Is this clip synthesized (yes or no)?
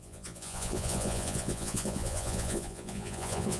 yes